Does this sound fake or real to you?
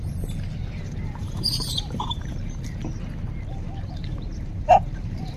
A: fake